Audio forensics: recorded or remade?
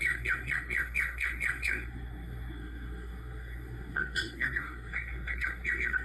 remade